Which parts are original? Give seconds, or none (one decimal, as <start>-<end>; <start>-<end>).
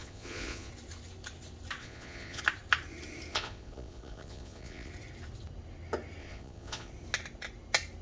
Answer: 0.7-1.8; 2.4-3.3; 4.9-6.2; 6.9-8.0